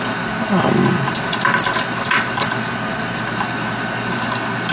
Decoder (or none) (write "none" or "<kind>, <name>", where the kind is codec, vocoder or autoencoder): none